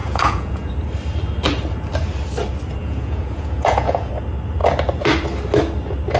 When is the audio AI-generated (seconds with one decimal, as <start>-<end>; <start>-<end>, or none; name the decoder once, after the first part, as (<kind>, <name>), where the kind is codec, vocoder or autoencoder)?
0.0-0.7 (vocoder, Vocos); 2.8-4.1